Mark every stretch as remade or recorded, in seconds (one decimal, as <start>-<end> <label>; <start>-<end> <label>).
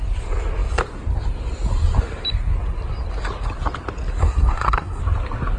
0.0-4.2 recorded; 4.2-5.0 remade; 5.0-5.6 recorded